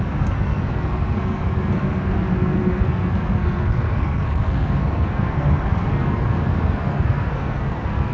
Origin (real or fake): fake